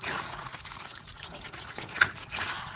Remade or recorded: remade